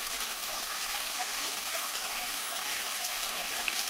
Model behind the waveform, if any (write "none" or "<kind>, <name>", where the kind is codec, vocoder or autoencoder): codec, DAC